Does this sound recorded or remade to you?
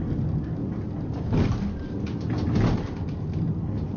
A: recorded